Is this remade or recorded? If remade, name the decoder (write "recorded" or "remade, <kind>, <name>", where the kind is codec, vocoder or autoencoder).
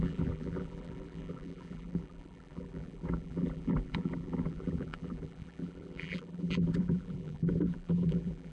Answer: remade, vocoder, BigVGAN v2